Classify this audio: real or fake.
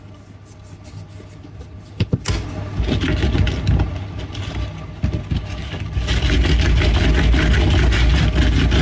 real